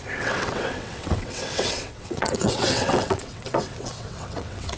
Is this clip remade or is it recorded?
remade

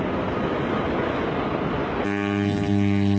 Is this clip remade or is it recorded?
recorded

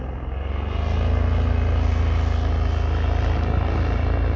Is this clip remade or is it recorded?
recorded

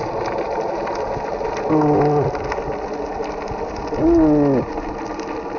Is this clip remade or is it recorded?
recorded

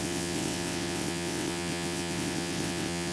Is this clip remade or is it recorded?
remade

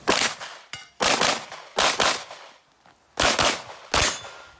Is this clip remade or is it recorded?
recorded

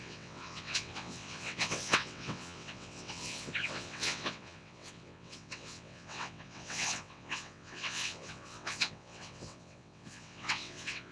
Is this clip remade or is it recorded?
remade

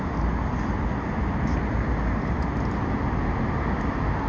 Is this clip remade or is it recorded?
recorded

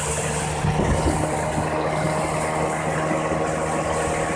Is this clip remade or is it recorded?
recorded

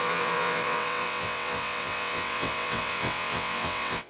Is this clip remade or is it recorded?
remade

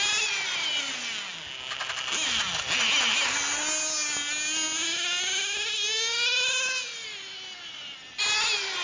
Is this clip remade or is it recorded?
recorded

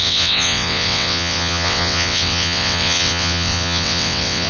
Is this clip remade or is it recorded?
remade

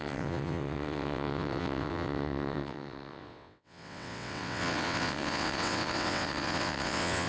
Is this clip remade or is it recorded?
remade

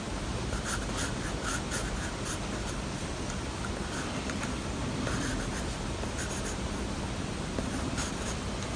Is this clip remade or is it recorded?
recorded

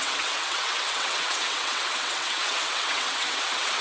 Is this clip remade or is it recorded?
remade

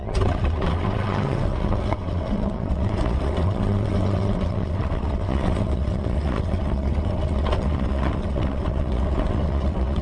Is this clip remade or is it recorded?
remade